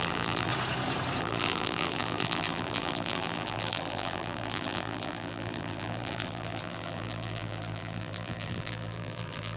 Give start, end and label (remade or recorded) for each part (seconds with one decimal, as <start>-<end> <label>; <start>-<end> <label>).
0.0-0.5 remade; 0.5-1.2 recorded; 1.2-9.6 remade

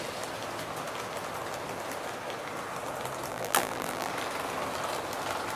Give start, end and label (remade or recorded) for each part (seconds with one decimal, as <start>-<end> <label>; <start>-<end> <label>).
0.0-3.3 recorded; 3.3-4.1 remade; 4.1-5.6 recorded

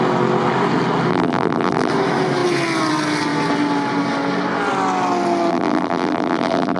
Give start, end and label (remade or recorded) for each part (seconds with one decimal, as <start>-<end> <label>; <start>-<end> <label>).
0.0-1.1 recorded; 1.1-1.9 remade; 1.9-5.5 recorded; 5.5-6.8 remade

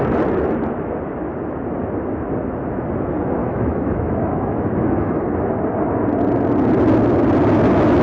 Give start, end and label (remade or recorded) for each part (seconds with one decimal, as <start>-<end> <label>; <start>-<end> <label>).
0.0-3.4 recorded; 3.4-5.2 remade; 5.2-8.0 recorded

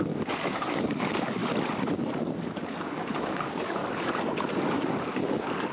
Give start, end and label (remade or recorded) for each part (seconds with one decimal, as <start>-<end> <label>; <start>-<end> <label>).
0.0-1.4 remade; 1.4-2.0 recorded; 2.0-3.8 remade; 3.8-4.7 recorded; 4.7-5.7 remade

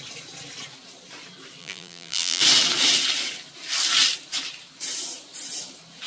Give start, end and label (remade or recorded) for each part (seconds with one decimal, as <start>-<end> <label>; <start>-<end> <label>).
0.0-1.6 recorded; 1.6-2.4 remade; 2.4-6.1 recorded

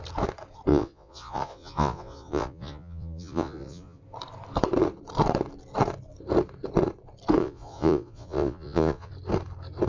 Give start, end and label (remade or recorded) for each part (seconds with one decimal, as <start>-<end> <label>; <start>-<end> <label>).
0.0-0.7 recorded; 0.7-4.0 remade; 4.0-7.4 recorded; 7.4-9.1 remade; 9.1-9.9 recorded

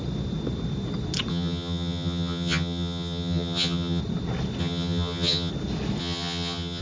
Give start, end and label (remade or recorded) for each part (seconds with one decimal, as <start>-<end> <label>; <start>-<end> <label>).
0.0-1.3 recorded; 1.3-4.0 remade; 4.0-4.6 recorded; 4.6-5.5 remade; 5.5-6.0 recorded; 6.0-6.8 remade